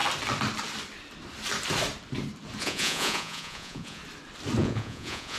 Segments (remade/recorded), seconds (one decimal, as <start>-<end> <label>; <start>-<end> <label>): 0.0-2.6 recorded; 2.6-4.0 remade; 4.0-4.6 recorded; 4.6-5.4 remade